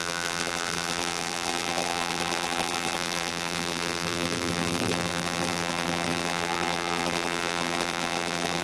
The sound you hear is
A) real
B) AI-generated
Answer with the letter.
B